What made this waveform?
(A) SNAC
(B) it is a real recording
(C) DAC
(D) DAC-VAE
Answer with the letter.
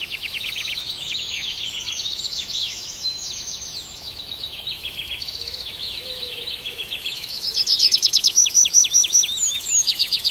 D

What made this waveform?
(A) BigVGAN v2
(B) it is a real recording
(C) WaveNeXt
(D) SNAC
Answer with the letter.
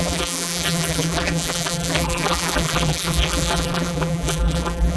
A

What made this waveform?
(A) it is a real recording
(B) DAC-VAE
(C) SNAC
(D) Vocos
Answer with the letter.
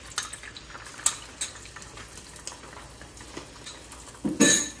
A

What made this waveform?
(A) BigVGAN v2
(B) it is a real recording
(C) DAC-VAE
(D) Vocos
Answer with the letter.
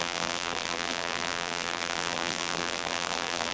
A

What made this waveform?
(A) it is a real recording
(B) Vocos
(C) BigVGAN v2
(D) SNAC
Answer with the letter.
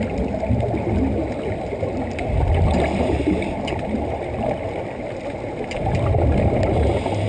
A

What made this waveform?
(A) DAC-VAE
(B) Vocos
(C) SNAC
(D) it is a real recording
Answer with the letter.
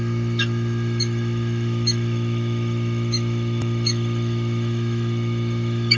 A